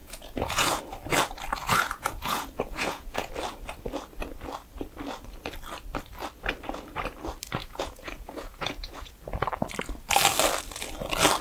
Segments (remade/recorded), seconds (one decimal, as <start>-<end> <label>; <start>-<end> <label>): 0.0-0.8 remade; 0.8-1.6 recorded; 1.6-3.3 remade; 3.3-7.6 recorded; 7.6-9.2 remade; 9.2-11.4 recorded